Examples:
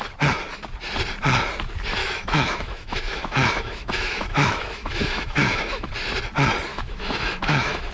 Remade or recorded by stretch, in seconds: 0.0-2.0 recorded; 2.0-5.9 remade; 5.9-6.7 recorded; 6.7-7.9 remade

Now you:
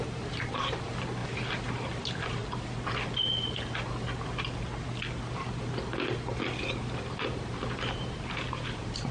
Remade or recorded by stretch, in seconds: 0.0-1.2 remade; 1.2-1.7 recorded; 1.7-2.4 remade; 2.4-7.1 recorded; 7.1-9.1 remade

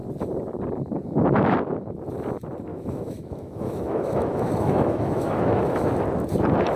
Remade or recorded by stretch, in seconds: 0.0-2.7 recorded; 2.7-5.9 remade; 5.9-6.8 recorded

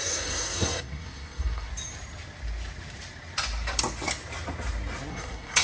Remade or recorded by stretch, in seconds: 0.0-1.7 remade; 1.7-5.1 recorded; 5.1-5.6 remade

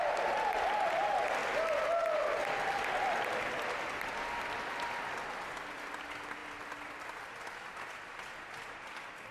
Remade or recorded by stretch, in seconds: 0.0-9.3 recorded